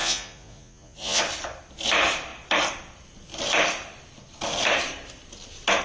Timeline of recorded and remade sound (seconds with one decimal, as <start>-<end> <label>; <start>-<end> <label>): 0.0-1.2 remade; 1.2-5.8 recorded